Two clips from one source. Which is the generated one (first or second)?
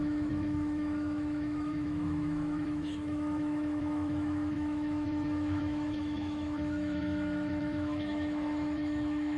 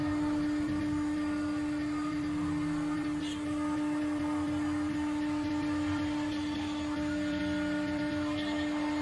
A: first